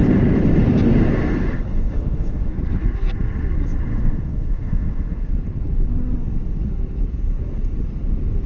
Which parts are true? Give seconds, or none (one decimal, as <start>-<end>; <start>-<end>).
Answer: 0.0-1.7; 2.5-3.9; 5.3-8.5